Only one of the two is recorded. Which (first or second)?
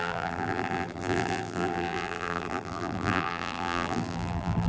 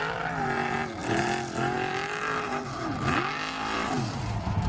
second